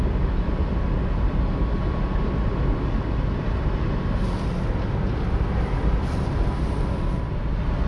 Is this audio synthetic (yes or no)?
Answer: no